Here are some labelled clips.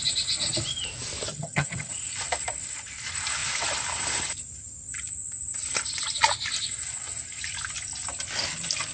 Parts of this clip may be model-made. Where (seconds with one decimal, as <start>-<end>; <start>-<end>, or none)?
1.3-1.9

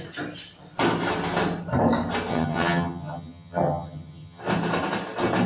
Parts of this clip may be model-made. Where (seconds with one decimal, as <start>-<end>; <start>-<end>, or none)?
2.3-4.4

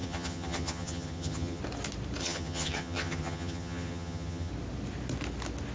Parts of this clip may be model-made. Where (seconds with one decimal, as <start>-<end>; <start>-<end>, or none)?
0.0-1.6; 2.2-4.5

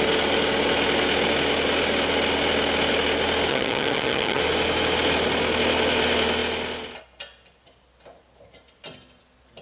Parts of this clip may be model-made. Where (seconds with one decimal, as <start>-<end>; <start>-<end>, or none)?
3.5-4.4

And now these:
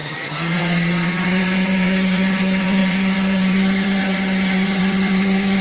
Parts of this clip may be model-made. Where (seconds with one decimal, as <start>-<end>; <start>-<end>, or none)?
0.0-5.6

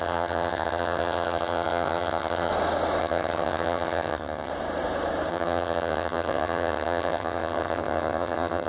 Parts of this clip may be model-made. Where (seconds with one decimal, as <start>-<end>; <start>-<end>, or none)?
0.0-2.5; 3.0-4.5; 5.3-8.7

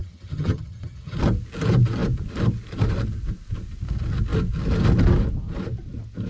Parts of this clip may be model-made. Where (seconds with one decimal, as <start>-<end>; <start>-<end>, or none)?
0.0-1.2

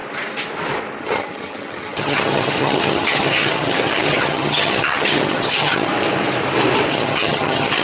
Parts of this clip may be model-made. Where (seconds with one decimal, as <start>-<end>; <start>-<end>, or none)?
1.0-5.9; 6.9-7.8